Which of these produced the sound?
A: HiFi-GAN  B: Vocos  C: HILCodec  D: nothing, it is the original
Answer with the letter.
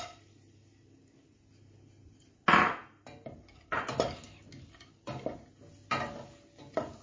D